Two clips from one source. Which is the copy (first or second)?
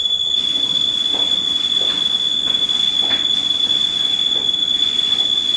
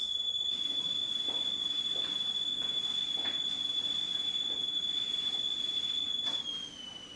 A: first